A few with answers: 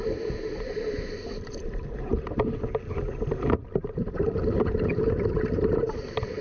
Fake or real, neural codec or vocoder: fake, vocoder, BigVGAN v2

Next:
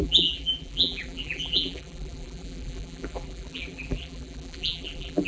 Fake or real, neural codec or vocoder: fake, vocoder, BigVGAN v2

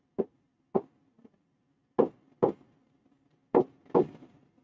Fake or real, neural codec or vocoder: real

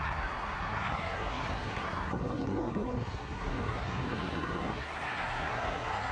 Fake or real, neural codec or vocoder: fake, codec, SNAC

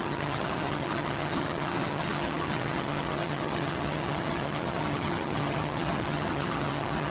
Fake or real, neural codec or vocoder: fake, vocoder, HiFi-GAN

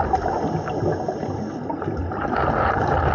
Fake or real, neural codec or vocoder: real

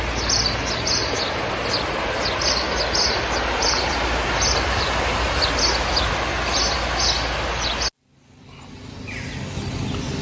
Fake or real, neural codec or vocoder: real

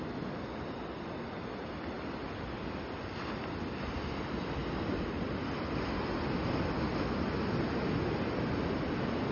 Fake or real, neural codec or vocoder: real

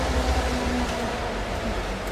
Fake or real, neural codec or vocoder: fake, vocoder, BigVGAN v2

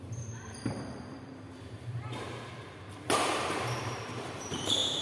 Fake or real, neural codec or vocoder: fake, vocoder, BigVGAN v2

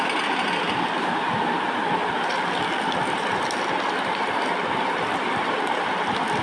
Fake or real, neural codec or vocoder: real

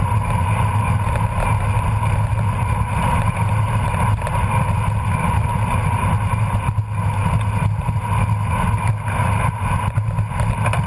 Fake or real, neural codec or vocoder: real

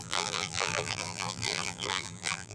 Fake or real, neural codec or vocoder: fake, vocoder, BigVGAN v2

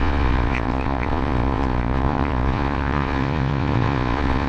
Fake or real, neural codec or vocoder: fake, vocoder, Vocos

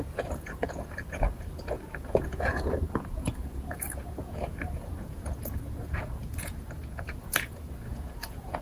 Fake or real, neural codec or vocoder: fake, vocoder, Vocos